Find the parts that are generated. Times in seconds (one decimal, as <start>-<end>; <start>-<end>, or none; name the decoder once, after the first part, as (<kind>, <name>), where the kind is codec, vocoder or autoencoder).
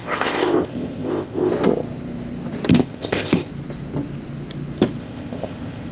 0.0-1.5 (codec, ZipCodec); 2.7-3.5; 5.0-5.9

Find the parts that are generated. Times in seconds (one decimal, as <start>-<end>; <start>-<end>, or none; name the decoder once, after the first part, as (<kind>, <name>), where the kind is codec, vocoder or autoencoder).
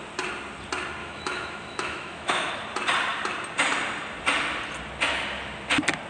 1.0-2.5 (autoencoder, DAC-VAE)